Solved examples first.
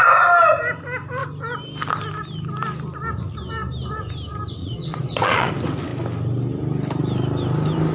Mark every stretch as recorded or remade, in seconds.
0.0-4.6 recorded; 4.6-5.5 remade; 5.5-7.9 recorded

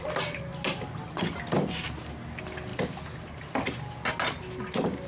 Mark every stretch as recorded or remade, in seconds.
0.0-5.1 recorded